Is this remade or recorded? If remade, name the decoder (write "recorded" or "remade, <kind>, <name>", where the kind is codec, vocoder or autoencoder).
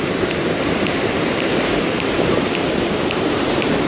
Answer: remade, vocoder, BigVGAN v2